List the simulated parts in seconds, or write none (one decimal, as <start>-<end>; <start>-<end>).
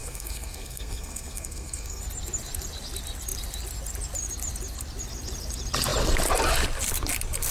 0.0-2.0